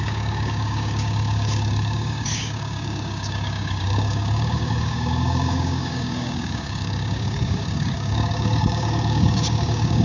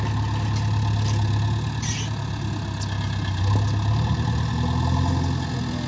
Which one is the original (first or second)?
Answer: second